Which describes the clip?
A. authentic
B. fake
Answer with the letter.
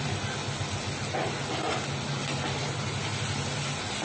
A